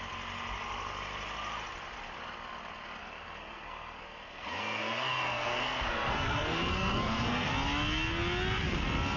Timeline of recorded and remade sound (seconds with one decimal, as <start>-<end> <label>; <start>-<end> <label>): 0.0-3.0 recorded; 3.0-7.5 remade; 7.5-9.2 recorded